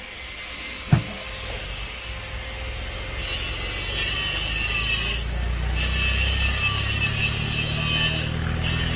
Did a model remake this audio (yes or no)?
no